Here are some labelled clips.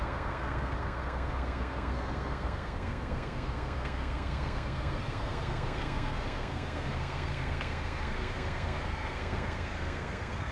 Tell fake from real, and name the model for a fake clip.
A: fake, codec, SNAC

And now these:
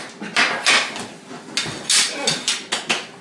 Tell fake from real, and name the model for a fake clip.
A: real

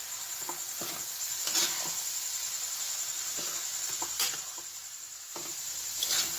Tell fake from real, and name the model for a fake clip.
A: real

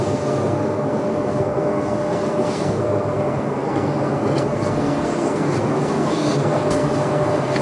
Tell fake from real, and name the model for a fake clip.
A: fake, codec, SNAC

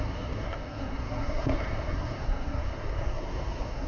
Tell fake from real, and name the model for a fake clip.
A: fake, codec, SNAC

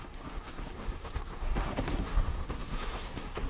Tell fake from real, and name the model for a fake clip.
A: fake, codec, SNAC